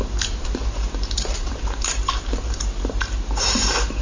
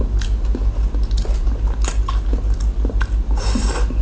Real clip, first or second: second